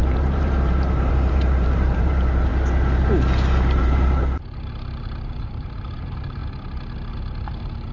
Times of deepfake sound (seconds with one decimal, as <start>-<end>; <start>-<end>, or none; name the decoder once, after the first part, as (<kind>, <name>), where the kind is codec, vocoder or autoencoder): 0.0-2.5 (vocoder, BigVGAN v2); 3.8-6.4; 7.5-7.9